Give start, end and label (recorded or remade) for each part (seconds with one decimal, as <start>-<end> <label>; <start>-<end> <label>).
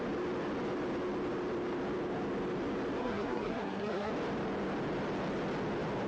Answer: 0.0-3.0 recorded; 3.0-4.1 remade; 4.1-6.1 recorded